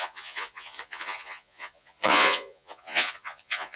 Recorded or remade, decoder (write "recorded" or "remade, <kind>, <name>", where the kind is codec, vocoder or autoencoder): remade, vocoder, Vocos